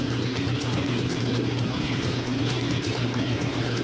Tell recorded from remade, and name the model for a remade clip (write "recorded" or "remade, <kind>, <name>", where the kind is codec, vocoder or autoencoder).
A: remade, codec, SNAC